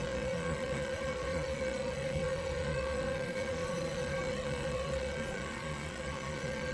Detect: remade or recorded remade